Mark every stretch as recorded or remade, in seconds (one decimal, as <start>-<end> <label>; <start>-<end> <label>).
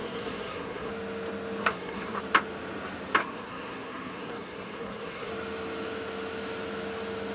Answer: 0.0-0.9 remade; 0.9-1.6 recorded; 1.6-2.2 remade; 2.2-3.2 recorded; 3.2-5.3 remade; 5.3-7.3 recorded